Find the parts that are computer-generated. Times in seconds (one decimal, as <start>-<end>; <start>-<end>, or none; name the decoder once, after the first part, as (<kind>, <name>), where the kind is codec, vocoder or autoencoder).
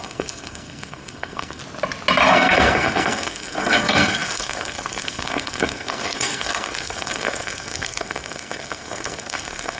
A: 0.0-1.6 (codec, SNAC); 2.3-9.8